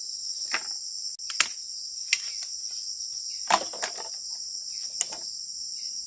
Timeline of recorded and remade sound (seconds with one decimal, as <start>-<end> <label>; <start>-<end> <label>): 0.0-6.1 recorded